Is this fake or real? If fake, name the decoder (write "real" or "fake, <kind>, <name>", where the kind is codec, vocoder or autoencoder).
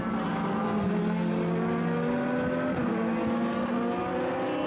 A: real